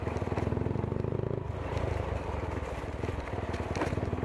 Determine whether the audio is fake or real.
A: real